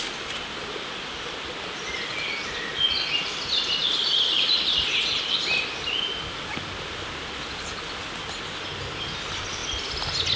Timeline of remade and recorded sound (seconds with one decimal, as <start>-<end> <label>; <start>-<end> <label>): 0.0-10.4 recorded